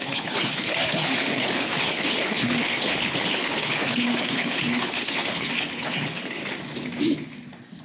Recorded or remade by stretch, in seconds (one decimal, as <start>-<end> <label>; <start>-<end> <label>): 0.0-6.4 remade; 6.4-7.8 recorded

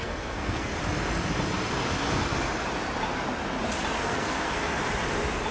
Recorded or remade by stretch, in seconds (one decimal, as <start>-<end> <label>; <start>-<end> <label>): 0.0-0.7 remade; 0.7-4.0 recorded; 4.0-4.8 remade; 4.8-5.5 recorded

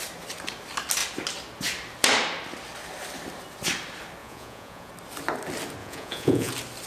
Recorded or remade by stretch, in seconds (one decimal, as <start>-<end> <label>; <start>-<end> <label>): 0.0-4.2 recorded; 4.2-4.9 remade; 4.9-5.8 recorded; 5.8-6.5 remade; 6.5-6.9 recorded

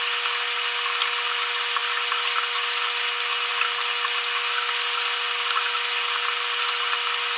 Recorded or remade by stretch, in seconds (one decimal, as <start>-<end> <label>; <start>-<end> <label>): 0.0-7.4 recorded